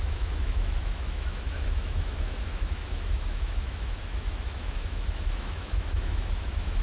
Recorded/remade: remade